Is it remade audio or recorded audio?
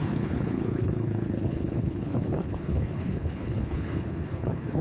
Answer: remade